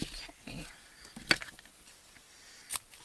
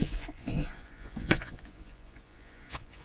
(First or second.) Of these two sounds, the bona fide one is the first